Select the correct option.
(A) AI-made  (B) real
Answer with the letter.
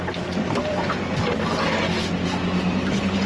B